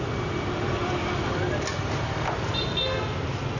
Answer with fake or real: real